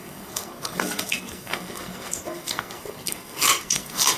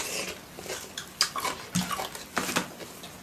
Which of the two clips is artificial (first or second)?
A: first